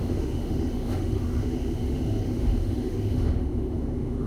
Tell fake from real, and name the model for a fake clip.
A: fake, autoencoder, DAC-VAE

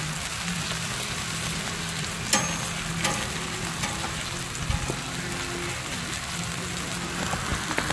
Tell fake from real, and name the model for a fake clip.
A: real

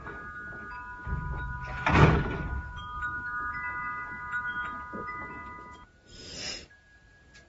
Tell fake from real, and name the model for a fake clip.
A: real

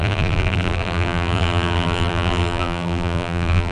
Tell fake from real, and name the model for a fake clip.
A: fake, vocoder, BigVGAN v2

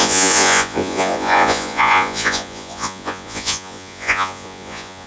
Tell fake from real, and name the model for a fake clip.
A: fake, vocoder, Vocos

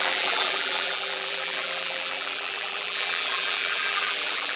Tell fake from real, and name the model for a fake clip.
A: fake, vocoder, BigVGAN v2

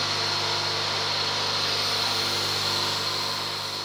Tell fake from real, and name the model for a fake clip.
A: real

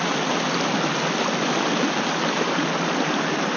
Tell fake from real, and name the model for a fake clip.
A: real